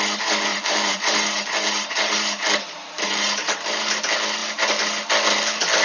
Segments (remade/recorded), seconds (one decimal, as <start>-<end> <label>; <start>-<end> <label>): 0.0-0.5 recorded; 0.5-3.9 remade; 3.9-5.8 recorded